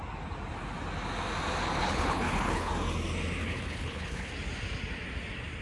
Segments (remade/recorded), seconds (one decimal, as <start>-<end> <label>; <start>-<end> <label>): 0.0-1.8 recorded; 1.8-2.7 remade; 2.7-3.4 recorded; 3.4-4.3 remade; 4.3-5.6 recorded